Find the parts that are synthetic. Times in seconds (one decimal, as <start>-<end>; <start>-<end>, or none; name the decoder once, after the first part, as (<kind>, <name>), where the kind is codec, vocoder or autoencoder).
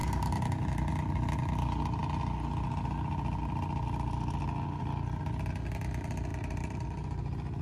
0.0-0.9 (vocoder, BigVGAN v2); 6.3-7.6